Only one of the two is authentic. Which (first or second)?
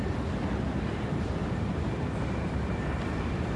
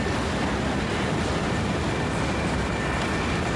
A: second